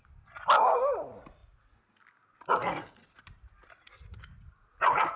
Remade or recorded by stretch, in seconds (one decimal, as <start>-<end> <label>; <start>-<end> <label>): 0.0-5.2 recorded